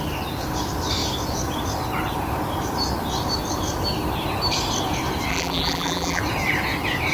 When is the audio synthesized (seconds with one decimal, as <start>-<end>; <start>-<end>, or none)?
5.3-6.2